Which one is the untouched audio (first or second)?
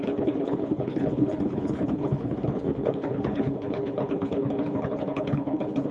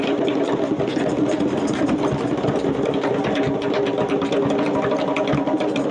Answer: second